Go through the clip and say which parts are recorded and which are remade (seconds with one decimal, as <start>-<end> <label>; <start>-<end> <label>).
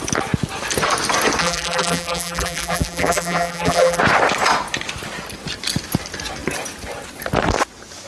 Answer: 0.0-1.4 recorded; 1.4-4.0 remade; 4.0-8.1 recorded